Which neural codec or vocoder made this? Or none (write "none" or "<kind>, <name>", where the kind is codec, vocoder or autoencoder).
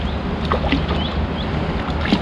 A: none